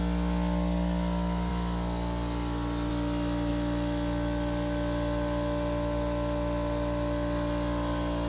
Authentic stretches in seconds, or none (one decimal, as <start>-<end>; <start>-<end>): 0.0-8.3